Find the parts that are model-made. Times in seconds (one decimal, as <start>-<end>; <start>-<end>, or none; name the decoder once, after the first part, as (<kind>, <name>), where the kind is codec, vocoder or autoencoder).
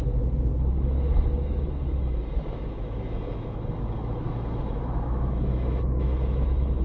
0.0-6.8 (autoencoder, DAC-VAE)